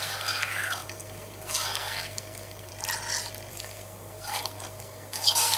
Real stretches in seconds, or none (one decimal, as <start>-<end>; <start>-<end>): 2.7-3.5